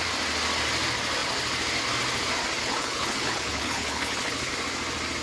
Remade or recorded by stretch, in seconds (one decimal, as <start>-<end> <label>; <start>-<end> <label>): 0.0-2.6 recorded; 2.6-4.5 remade; 4.5-5.2 recorded